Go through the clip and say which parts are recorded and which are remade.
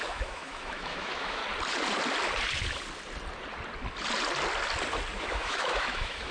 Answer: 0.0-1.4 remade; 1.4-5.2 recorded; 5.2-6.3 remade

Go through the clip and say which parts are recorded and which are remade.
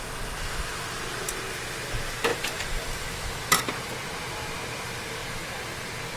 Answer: 0.0-2.3 recorded; 2.3-3.7 remade; 3.7-6.2 recorded